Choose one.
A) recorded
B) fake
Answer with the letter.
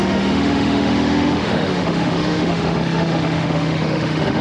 B